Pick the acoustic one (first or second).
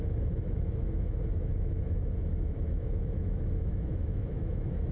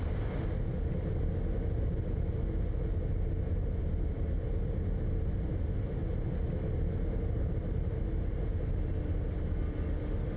second